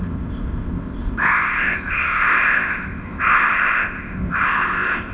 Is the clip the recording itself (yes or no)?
no